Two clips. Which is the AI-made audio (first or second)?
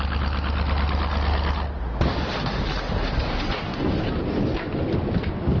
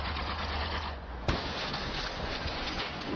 second